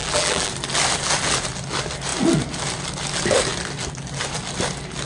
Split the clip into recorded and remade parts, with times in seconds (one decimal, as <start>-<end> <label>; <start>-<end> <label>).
0.0-0.5 remade; 0.5-5.1 recorded

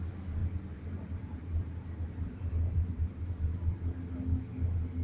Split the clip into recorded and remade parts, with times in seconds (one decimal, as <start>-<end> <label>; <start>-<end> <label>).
0.0-0.4 recorded; 0.4-3.2 remade; 3.2-5.0 recorded

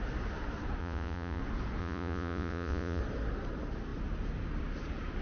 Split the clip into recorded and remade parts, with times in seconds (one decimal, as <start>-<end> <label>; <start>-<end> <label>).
0.0-0.8 recorded; 0.8-1.4 remade; 1.4-1.8 recorded; 1.8-3.0 remade; 3.0-5.2 recorded

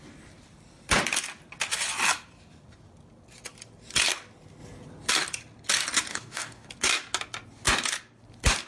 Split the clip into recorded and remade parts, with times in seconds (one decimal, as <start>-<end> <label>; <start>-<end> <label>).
0.0-6.1 recorded; 6.1-6.7 remade; 6.7-8.7 recorded

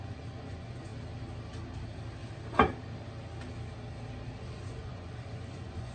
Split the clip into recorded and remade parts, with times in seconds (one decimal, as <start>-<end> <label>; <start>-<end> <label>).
0.0-0.9 remade; 0.9-4.4 recorded; 4.4-5.9 remade